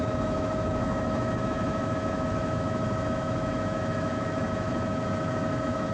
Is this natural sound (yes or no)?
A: no